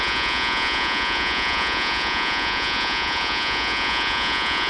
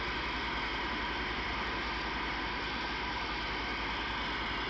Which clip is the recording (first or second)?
second